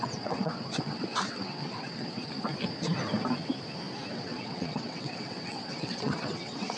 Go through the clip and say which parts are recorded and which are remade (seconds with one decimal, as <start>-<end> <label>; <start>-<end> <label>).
0.0-2.2 remade; 2.2-4.1 recorded; 4.1-6.8 remade